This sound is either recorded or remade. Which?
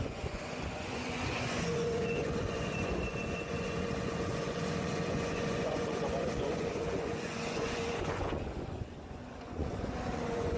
remade